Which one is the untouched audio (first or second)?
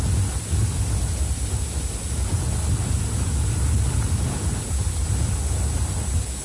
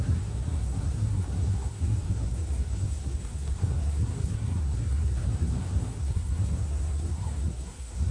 first